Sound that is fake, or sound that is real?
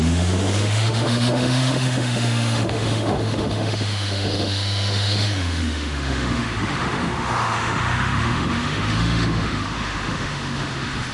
fake